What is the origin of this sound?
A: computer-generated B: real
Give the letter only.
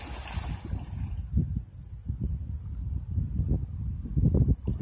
B